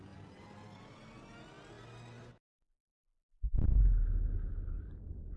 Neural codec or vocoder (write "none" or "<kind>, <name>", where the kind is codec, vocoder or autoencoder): none